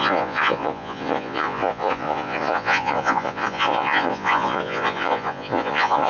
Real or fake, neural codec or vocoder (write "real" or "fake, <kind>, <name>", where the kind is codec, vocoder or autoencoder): fake, vocoder, Vocos